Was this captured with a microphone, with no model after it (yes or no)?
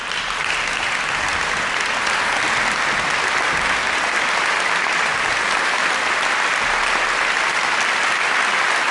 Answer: yes